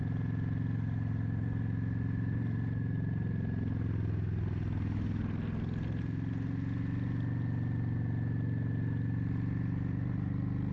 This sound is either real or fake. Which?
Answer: real